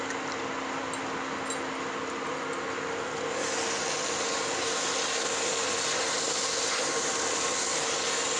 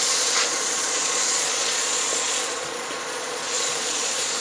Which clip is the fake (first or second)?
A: second